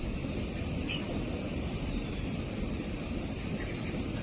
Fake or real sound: real